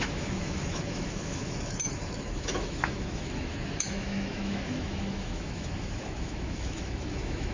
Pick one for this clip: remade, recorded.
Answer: remade